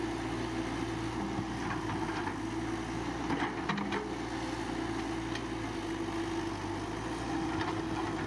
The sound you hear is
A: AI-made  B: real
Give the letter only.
B